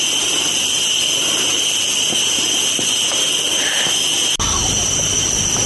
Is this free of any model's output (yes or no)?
yes